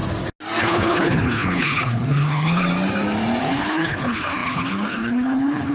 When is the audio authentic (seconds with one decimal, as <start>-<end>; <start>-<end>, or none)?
0.0-0.6; 2.6-3.4